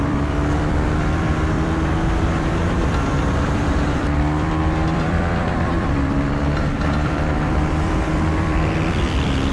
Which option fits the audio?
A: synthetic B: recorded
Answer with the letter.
A